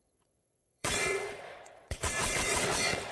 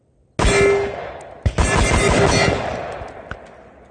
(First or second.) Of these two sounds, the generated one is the first